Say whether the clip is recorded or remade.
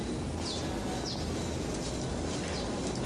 recorded